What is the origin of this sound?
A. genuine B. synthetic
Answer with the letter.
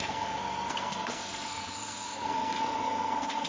B